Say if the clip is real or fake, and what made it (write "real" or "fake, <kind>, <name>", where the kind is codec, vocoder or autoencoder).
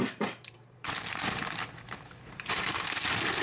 fake, vocoder, BigVGAN v2